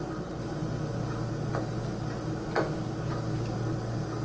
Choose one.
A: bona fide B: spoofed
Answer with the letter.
A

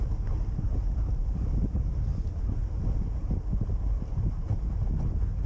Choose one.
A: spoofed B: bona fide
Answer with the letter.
B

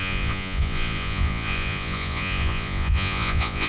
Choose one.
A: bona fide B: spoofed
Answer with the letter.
B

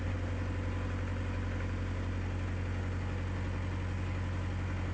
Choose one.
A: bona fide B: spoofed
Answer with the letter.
A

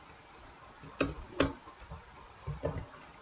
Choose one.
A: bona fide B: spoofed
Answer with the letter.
A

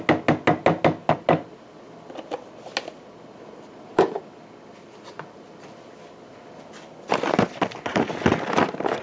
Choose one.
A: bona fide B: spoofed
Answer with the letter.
A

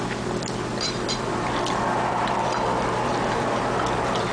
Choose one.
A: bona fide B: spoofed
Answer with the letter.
B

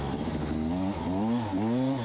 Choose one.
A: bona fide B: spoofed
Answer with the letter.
A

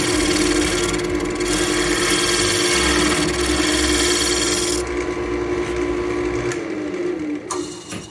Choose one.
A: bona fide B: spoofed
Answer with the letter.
A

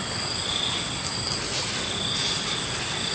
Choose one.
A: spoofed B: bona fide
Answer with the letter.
B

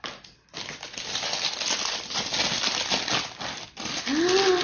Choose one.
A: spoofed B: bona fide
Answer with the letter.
B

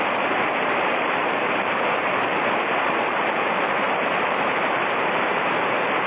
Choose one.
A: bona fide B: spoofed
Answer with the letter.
B